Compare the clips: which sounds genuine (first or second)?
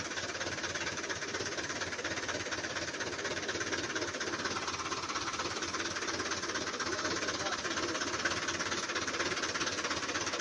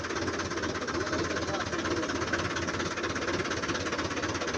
second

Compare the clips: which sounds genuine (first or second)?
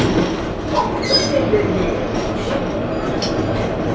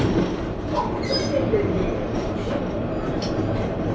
first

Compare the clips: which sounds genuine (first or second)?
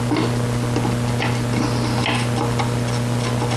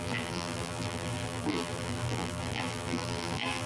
first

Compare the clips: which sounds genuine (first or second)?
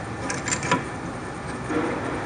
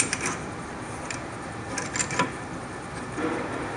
first